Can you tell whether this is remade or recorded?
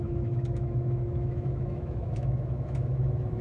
remade